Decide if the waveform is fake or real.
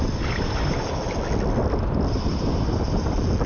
real